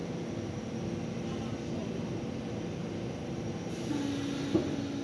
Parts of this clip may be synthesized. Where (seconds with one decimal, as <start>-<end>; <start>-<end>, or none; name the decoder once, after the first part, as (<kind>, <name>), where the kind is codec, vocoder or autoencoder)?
none